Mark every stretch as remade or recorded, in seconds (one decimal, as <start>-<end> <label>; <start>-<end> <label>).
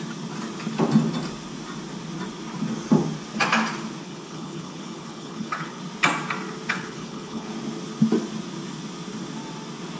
0.0-4.0 recorded; 4.0-5.8 remade; 5.8-6.7 recorded; 6.7-7.5 remade; 7.5-10.0 recorded